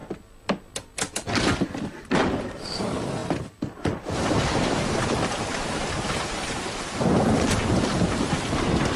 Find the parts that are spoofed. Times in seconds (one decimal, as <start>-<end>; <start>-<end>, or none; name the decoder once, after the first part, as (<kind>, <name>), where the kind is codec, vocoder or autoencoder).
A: 1.9-3.2 (vocoder, BigVGAN v2); 4.3-9.0